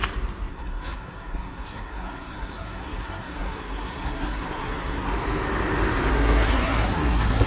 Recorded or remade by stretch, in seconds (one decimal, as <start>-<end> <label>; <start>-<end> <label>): 0.0-0.5 recorded; 0.5-5.1 remade; 5.1-6.1 recorded; 6.1-7.5 remade